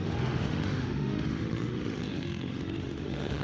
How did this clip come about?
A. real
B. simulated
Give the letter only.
B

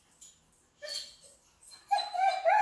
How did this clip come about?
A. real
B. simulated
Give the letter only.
A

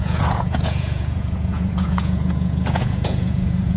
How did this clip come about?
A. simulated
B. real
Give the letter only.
A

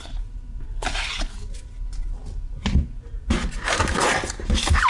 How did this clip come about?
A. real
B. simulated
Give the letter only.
A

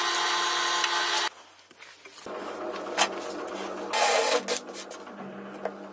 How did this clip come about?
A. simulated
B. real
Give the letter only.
B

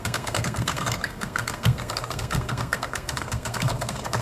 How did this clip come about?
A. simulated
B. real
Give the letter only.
A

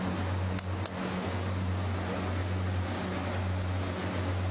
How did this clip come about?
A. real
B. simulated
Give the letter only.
A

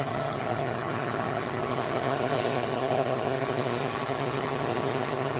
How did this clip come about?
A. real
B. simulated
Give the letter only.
B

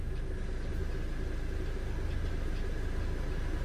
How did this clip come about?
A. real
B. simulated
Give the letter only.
A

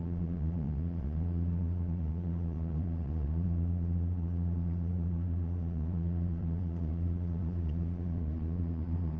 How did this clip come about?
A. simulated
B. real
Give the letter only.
A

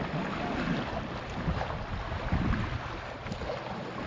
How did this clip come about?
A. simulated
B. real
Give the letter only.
B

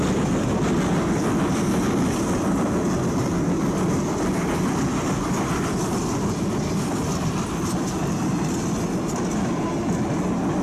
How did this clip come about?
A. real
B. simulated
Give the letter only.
A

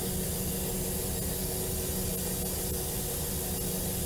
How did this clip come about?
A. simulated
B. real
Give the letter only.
B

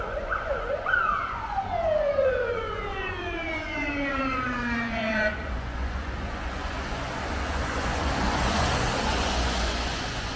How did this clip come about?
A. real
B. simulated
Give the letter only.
B